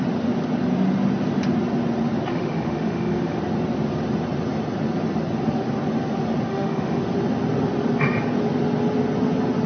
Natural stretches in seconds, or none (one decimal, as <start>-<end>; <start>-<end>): 0.0-2.3; 3.4-6.5; 7.0-9.7